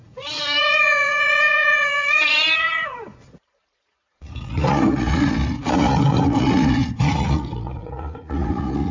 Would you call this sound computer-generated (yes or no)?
yes